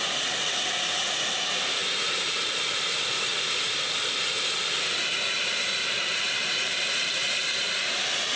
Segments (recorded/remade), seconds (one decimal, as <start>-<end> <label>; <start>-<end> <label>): 0.0-7.2 remade; 7.2-7.9 recorded; 7.9-8.4 remade